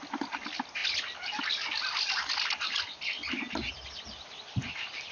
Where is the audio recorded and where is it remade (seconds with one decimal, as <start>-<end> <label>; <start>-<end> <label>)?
0.0-5.1 recorded